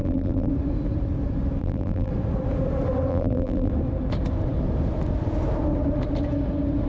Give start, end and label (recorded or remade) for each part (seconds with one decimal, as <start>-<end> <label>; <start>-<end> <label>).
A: 0.0-0.5 remade; 0.5-1.6 recorded; 1.6-2.1 remade; 2.1-3.1 recorded; 3.1-3.7 remade; 3.7-6.9 recorded